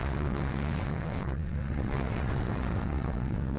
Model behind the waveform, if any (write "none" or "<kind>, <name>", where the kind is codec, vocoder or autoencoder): vocoder, WaveNeXt